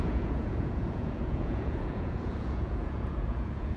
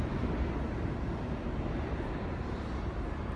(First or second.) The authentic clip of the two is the second